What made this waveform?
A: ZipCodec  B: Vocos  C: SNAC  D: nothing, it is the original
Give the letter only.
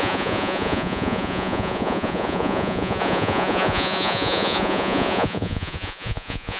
B